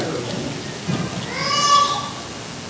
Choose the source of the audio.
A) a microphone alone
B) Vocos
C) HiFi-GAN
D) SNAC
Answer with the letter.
A